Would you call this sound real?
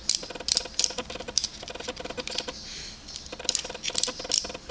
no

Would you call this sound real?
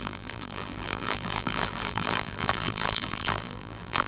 no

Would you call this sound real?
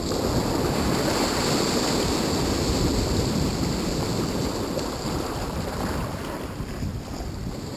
yes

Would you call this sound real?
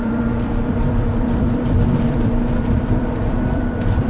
no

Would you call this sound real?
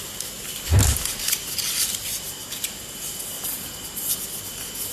yes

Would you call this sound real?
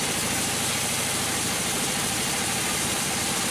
yes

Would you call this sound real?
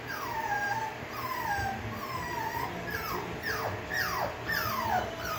no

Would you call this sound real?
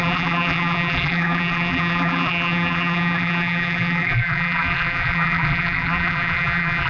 no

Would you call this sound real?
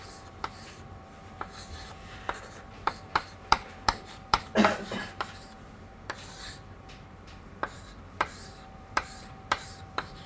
no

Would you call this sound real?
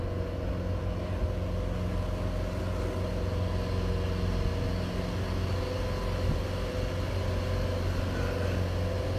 yes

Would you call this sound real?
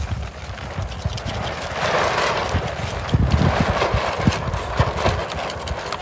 yes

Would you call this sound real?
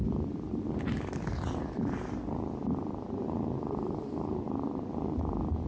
yes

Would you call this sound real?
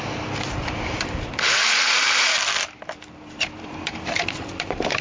no